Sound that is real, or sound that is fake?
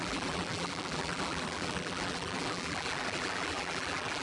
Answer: fake